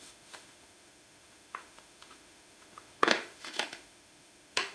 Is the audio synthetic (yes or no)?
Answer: yes